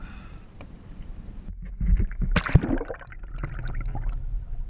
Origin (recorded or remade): recorded